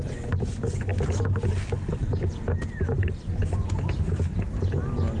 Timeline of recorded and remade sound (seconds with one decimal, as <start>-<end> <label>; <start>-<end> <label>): 0.0-5.2 recorded